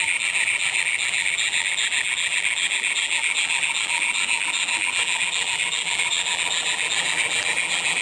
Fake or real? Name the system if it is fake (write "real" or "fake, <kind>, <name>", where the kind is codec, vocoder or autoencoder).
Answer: fake, vocoder, BigVGAN v2